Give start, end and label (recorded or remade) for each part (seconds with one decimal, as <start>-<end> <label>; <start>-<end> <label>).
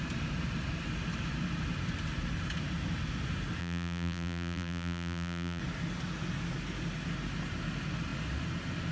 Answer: 0.0-3.6 recorded; 3.6-5.6 remade; 5.6-8.9 recorded